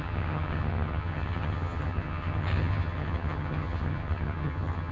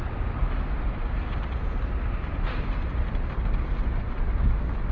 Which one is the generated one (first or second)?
first